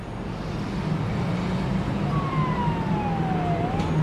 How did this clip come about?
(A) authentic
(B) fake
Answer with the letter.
A